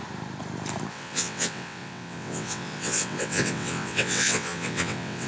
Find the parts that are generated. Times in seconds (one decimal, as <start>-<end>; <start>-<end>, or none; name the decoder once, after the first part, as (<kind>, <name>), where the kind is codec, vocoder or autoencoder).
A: 0.9-5.3 (vocoder, WaveNeXt)